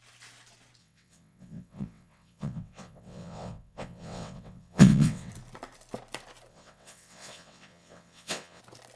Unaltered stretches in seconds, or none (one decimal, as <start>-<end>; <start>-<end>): 0.0-0.8; 5.3-6.5; 8.6-9.0